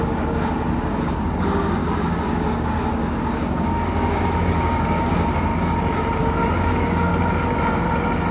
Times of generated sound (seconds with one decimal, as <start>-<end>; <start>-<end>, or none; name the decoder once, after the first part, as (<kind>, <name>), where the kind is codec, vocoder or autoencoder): 0.0-5.5 (codec, DAC); 6.2-7.1